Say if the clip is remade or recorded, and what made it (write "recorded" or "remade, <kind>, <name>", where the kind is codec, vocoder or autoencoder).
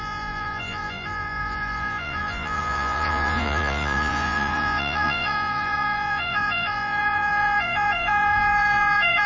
remade, vocoder, Vocos